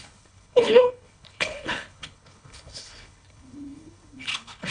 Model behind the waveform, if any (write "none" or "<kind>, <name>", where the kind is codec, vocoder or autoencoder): codec, HILCodec